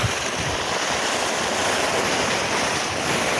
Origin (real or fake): real